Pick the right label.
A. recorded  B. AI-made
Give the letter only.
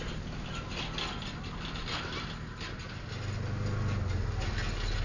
A